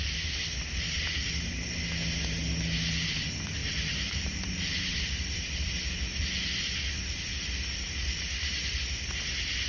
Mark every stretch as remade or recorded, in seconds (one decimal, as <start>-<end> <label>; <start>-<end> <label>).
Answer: 0.0-3.6 recorded; 3.6-6.9 remade; 6.9-9.7 recorded